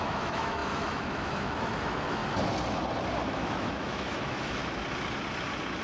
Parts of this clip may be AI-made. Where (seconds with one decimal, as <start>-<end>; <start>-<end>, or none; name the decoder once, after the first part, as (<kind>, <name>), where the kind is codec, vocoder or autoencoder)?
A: 0.0-2.2 (autoencoder, DAC-VAE); 3.2-4.8